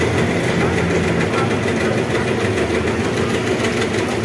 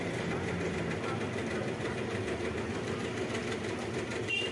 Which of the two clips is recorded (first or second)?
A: first